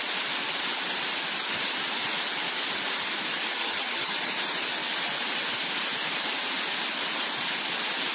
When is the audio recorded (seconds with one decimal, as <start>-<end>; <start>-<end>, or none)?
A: 0.0-3.6; 4.3-8.1